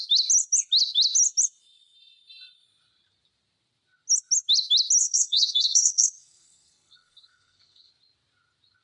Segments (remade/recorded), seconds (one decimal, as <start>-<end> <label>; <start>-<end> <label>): 0.0-5.0 recorded; 5.0-7.9 remade; 7.9-8.8 recorded